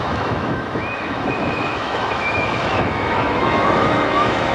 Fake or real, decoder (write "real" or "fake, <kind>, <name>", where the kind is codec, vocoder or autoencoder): fake, autoencoder, DAC-VAE